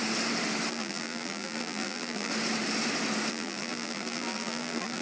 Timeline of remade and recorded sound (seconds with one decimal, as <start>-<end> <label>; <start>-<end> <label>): 0.0-0.7 recorded; 0.7-2.3 remade; 2.3-3.3 recorded; 3.3-5.0 remade

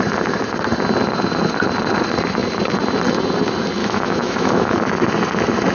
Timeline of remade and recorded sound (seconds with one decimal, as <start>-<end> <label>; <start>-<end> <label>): 0.0-3.8 recorded; 3.8-5.0 remade; 5.0-5.7 recorded